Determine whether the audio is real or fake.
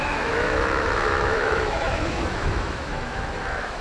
fake